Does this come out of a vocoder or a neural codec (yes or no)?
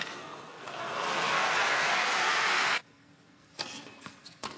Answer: yes